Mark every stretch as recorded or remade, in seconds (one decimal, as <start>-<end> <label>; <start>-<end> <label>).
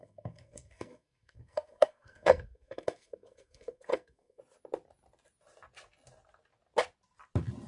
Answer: 0.0-4.4 remade; 4.4-7.7 recorded